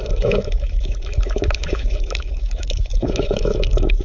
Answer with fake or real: fake